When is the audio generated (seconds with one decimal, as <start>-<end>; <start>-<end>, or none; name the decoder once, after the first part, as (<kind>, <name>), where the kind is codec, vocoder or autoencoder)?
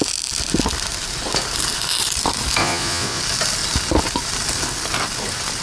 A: 2.6-3.2 (vocoder, Vocos)